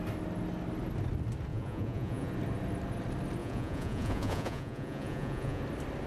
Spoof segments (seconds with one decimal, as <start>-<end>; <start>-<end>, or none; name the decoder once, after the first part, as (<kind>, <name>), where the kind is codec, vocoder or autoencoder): 1.5-2.3 (vocoder, Vocos); 3.4-5.6